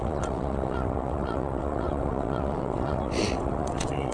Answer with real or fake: fake